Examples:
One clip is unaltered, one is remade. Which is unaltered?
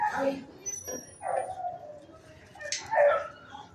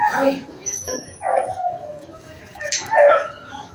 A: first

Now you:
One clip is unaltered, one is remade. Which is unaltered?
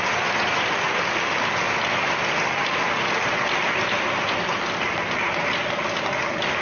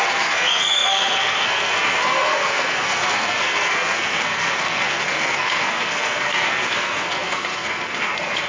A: first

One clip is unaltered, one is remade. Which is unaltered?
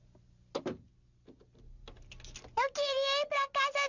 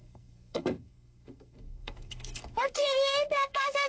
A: first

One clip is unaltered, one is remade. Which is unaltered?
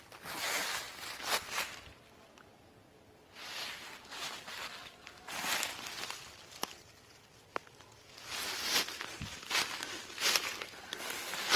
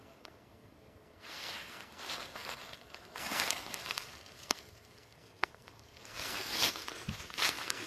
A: first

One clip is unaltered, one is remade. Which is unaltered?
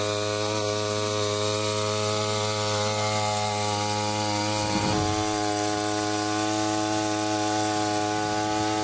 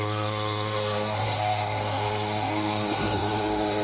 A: first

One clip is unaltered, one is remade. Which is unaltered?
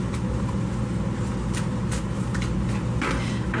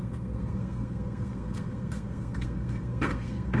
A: first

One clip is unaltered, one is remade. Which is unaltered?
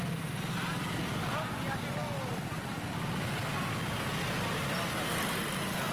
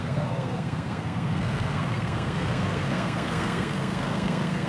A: first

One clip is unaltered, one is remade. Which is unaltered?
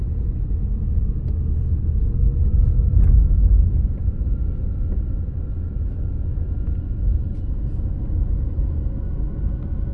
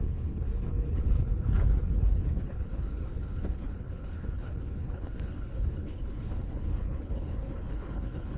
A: first